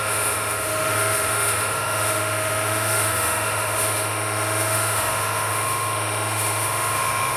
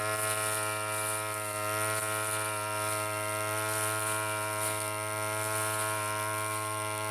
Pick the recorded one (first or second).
second